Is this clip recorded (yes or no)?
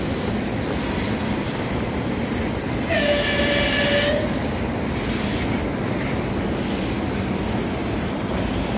yes